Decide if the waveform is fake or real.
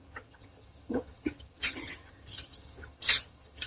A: fake